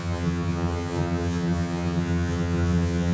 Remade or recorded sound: remade